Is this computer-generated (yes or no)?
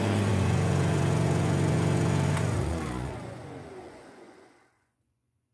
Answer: yes